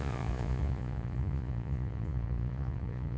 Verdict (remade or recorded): remade